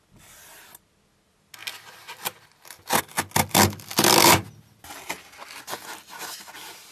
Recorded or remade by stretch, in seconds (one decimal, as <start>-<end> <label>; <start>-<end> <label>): 0.0-6.9 recorded